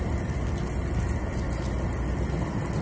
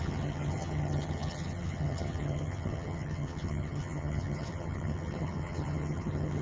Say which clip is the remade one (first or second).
second